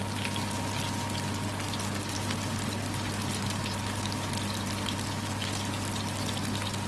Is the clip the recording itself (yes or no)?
yes